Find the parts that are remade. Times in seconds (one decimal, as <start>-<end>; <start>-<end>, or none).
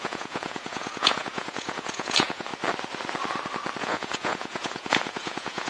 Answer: 0.0-2.5; 3.8-5.7